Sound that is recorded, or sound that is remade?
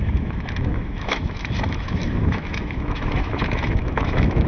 remade